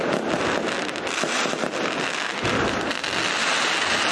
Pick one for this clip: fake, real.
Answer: real